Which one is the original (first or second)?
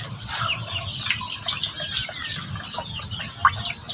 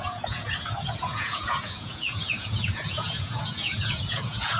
first